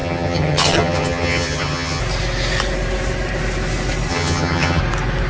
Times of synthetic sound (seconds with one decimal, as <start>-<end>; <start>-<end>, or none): 0.0-2.0; 4.1-4.8